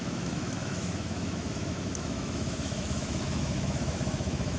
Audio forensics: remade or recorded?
remade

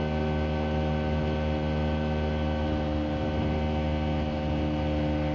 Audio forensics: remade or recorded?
recorded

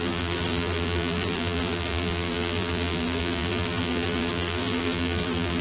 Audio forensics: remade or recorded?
remade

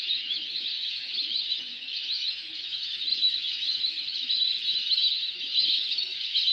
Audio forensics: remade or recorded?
remade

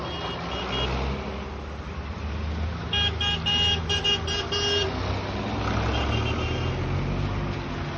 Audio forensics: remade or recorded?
recorded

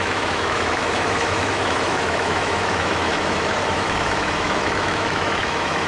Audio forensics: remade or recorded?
remade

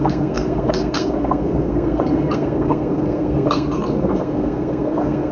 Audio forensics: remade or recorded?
remade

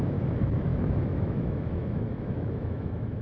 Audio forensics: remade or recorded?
remade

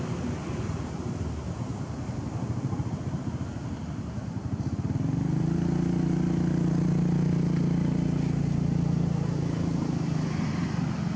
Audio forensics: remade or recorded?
recorded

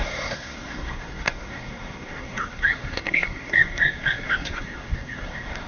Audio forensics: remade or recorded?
remade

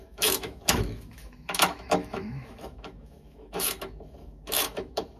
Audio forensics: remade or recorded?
remade